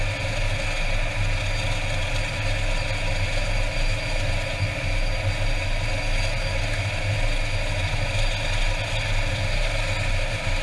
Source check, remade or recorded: recorded